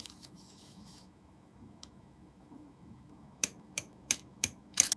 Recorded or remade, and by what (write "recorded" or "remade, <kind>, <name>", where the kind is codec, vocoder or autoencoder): remade, autoencoder, DAC-VAE